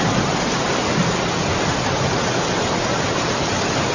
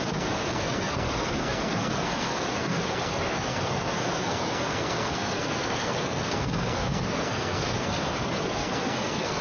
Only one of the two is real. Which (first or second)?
first